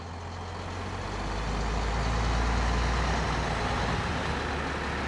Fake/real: real